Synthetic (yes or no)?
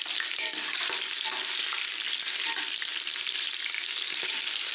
yes